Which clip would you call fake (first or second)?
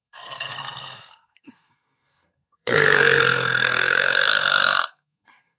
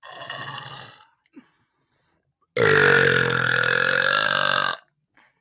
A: first